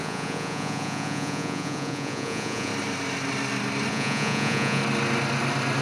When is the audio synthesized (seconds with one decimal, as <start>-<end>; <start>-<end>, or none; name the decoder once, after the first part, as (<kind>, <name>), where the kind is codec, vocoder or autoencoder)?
0.0-2.7 (vocoder, Vocos); 3.9-4.8